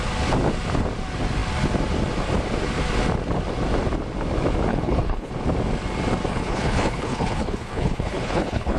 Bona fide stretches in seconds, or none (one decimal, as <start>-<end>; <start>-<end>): 0.0-4.7; 5.3-6.3